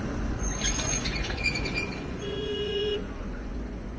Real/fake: fake